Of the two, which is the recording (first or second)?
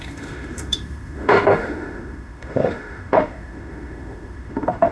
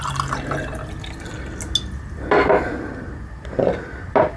second